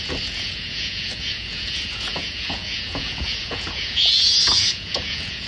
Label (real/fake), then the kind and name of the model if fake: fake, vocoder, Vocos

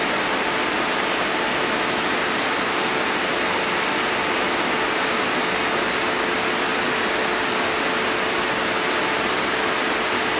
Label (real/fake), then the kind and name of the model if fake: real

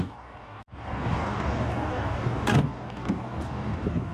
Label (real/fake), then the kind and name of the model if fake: fake, codec, DAC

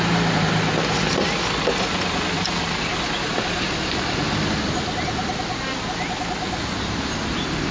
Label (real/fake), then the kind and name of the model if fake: real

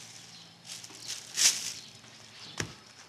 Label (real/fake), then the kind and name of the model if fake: real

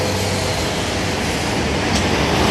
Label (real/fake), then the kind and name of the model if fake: real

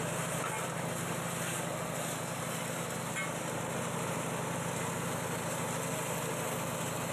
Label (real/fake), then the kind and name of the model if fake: real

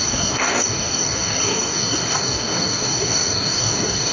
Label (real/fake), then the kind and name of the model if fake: fake, codec, DAC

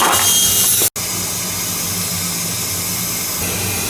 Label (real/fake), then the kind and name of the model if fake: real